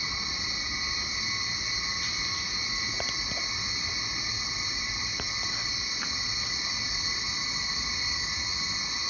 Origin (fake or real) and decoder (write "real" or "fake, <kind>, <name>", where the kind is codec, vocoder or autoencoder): real